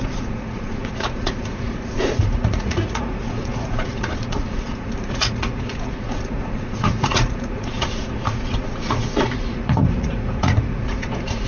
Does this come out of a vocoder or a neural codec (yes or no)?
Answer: yes